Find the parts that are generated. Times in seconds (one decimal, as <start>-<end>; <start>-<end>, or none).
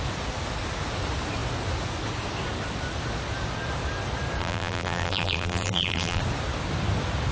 4.4-6.2